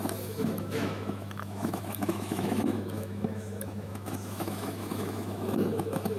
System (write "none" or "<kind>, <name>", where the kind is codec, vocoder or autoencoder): autoencoder, DAC-VAE